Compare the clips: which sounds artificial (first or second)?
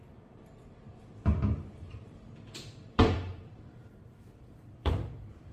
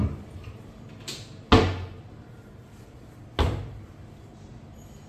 first